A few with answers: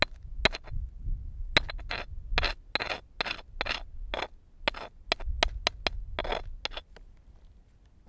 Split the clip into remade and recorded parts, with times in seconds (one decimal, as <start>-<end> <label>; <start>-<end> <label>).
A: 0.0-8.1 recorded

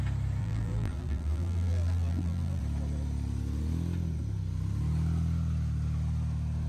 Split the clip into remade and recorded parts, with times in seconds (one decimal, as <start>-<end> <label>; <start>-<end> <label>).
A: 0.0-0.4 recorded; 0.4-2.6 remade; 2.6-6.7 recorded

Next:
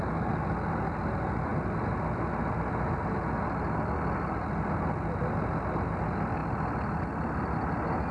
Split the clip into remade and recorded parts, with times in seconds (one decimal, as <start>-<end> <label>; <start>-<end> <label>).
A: 0.0-8.1 recorded

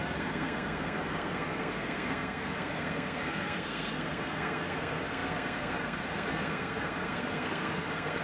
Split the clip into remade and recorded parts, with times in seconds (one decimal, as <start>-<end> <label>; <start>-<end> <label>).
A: 0.0-8.2 remade

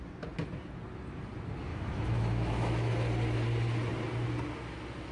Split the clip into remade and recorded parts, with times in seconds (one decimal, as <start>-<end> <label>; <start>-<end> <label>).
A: 0.0-1.7 recorded; 1.7-2.9 remade; 2.9-5.1 recorded

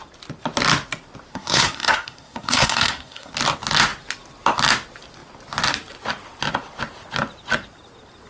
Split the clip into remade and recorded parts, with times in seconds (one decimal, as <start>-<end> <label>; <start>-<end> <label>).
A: 0.0-1.3 recorded; 1.3-3.3 remade; 3.3-8.3 recorded

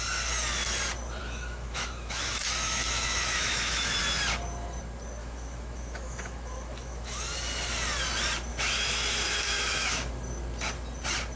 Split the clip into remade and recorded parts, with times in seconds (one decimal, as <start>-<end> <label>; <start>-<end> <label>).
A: 0.0-1.2 recorded; 1.2-4.0 remade; 4.0-5.2 recorded; 5.2-7.2 remade; 7.2-8.5 recorded; 8.5-10.1 remade; 10.1-11.4 recorded